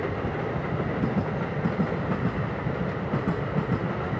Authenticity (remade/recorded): recorded